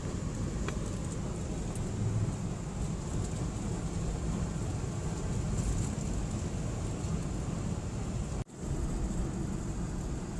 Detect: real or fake real